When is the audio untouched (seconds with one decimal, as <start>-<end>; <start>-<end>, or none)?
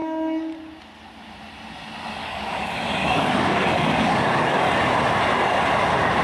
0.0-2.2; 4.7-6.2